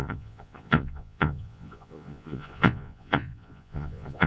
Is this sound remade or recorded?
remade